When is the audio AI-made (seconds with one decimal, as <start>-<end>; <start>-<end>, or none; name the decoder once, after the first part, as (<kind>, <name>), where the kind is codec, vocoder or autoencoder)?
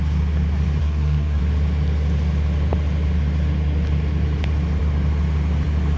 0.8-1.4 (codec, SNAC)